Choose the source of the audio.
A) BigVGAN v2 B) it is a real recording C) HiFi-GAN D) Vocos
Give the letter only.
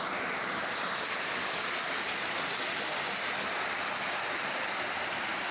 B